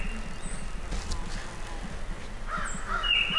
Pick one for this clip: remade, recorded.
recorded